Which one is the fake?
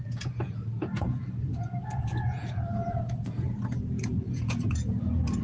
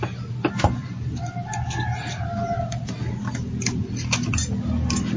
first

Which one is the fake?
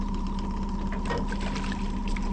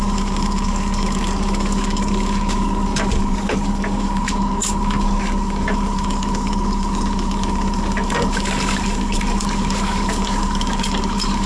second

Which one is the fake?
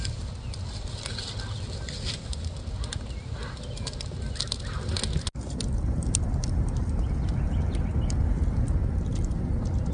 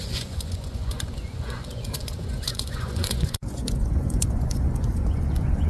second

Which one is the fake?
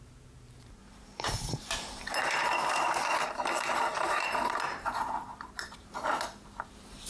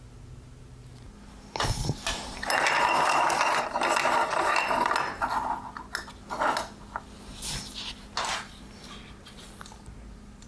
first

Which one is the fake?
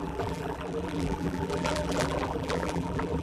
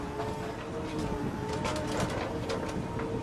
first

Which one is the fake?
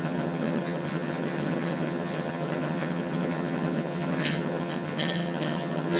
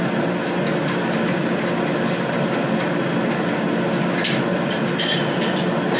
first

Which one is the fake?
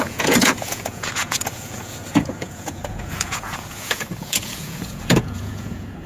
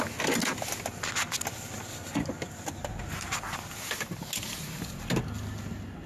first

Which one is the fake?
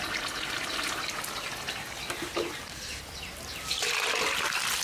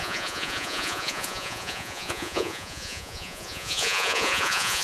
second